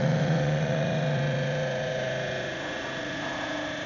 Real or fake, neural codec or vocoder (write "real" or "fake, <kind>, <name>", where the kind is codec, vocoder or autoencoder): fake, vocoder, Vocos